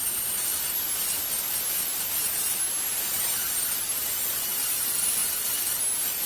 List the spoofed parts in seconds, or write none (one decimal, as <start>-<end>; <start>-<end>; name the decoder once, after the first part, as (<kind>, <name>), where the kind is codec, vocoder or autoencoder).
none